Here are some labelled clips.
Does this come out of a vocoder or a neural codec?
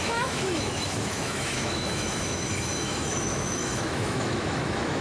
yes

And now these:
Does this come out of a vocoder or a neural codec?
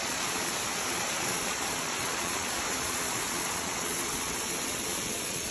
yes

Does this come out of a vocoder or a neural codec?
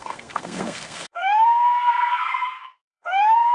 yes